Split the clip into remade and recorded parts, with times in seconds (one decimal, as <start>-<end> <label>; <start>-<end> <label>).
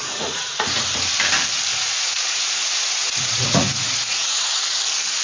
0.0-1.1 remade; 1.1-1.7 recorded; 1.7-4.8 remade; 4.8-5.2 recorded